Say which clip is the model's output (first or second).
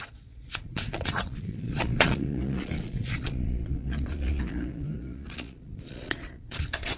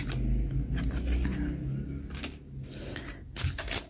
first